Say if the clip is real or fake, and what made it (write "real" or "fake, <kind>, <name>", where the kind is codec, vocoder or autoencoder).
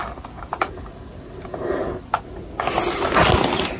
real